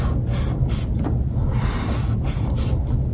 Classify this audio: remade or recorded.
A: recorded